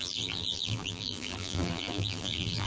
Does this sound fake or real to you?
fake